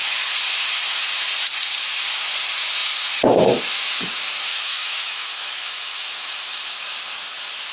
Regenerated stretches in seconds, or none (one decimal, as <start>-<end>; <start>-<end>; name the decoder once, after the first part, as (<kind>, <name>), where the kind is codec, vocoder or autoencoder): 4.5-6.6 (autoencoder, DAC-VAE)